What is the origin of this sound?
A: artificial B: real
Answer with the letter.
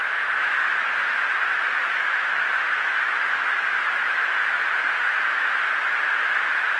A